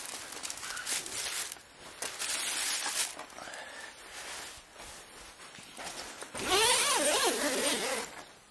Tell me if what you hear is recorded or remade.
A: recorded